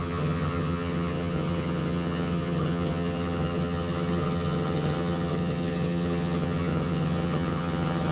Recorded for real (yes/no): no